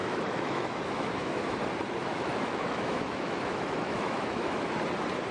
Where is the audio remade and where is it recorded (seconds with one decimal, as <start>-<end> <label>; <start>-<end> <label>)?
0.0-1.6 remade; 1.6-2.1 recorded; 2.1-4.7 remade; 4.7-5.3 recorded